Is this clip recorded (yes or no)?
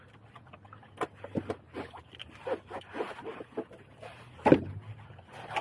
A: yes